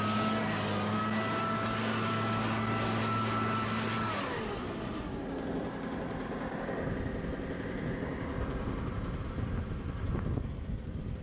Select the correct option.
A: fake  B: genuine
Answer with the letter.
B